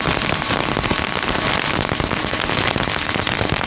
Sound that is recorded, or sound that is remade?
recorded